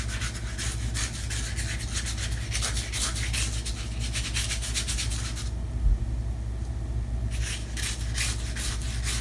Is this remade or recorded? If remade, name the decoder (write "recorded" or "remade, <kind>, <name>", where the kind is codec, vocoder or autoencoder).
recorded